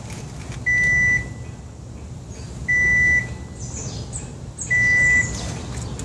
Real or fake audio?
real